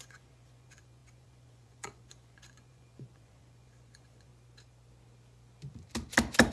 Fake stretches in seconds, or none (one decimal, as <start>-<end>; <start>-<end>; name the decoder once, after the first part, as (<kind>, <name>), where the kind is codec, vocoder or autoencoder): 0.0-4.3 (vocoder, Vocos)